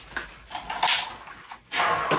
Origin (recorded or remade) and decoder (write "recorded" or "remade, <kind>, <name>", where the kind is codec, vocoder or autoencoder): recorded